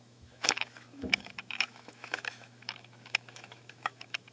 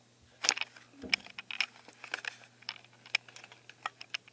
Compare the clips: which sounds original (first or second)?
second